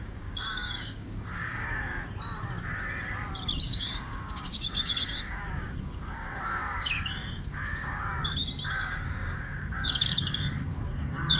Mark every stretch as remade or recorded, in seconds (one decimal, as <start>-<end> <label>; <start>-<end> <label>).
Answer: 0.0-1.9 remade; 1.9-3.6 recorded; 3.6-8.1 remade; 8.1-8.7 recorded; 8.7-11.4 remade